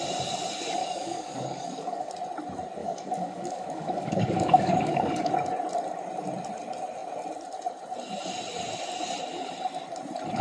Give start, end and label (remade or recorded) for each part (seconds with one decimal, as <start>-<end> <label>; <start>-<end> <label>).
0.0-0.8 recorded; 0.8-2.1 remade; 2.1-2.8 recorded; 2.8-5.3 remade; 5.3-10.4 recorded